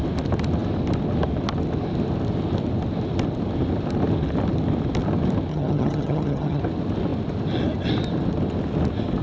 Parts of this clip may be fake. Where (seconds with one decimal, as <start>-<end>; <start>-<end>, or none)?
5.5-6.6